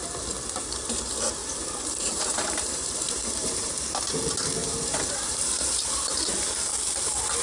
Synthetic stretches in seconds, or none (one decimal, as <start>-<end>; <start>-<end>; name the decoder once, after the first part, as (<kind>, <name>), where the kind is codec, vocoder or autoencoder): 1.4-3.7 (vocoder, BigVGAN v2); 4.6-6.3